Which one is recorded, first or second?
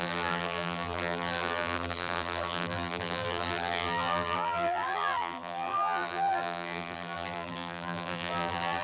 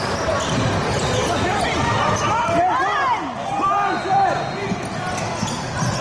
second